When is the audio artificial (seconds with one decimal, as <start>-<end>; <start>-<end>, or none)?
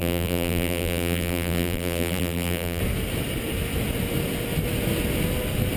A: 0.0-2.8